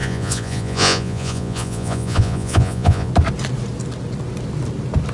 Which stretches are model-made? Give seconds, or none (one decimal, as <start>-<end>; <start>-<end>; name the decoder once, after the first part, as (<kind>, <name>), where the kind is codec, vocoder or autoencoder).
0.0-3.1 (vocoder, Vocos)